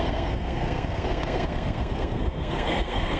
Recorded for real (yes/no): no